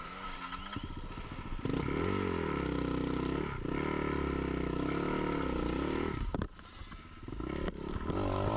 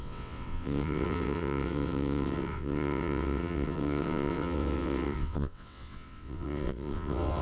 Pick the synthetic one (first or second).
second